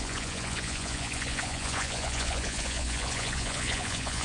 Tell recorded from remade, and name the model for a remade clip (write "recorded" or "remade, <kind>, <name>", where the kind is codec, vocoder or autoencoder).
remade, vocoder, Vocos